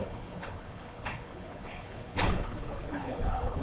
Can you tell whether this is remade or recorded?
remade